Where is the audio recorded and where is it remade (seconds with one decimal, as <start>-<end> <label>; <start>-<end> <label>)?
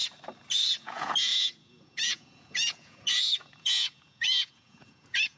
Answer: 0.0-0.7 recorded; 0.7-5.4 remade